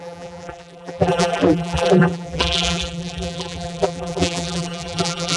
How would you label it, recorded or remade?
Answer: remade